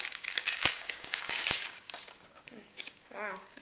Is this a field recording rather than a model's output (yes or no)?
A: no